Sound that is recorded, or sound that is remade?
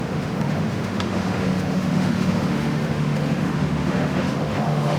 remade